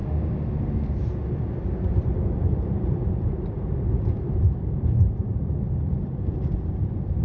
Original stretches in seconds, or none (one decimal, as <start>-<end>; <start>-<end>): 0.0-2.4